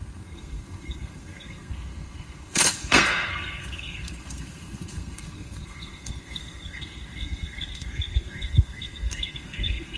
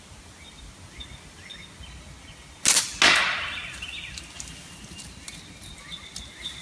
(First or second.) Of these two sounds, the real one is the second